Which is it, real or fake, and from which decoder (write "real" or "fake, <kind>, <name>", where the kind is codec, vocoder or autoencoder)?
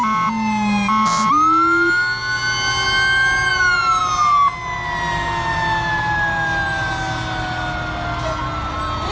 real